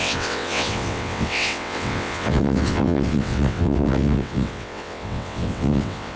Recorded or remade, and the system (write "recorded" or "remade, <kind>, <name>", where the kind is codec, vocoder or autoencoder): remade, vocoder, WaveNeXt